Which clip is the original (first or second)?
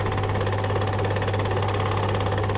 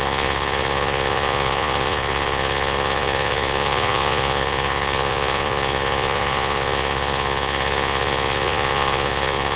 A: first